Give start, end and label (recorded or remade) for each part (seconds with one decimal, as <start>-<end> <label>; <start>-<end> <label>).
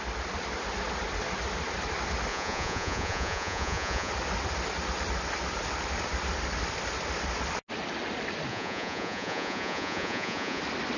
0.0-2.3 recorded; 2.3-4.1 remade; 4.1-8.5 recorded; 8.5-10.6 remade; 10.6-11.0 recorded